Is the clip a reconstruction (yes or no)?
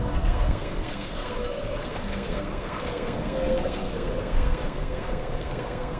yes